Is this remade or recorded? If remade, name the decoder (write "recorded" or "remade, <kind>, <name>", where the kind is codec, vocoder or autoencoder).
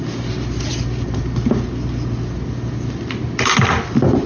recorded